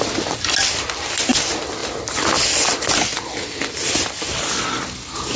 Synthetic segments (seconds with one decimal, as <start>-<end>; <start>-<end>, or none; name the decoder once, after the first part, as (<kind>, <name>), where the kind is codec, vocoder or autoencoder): none